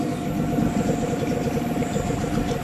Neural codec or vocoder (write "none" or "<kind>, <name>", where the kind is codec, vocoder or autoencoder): none